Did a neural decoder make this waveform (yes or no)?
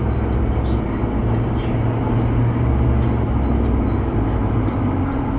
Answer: no